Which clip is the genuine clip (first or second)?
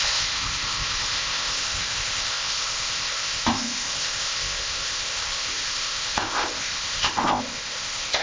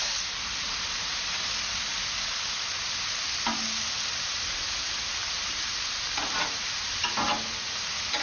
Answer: second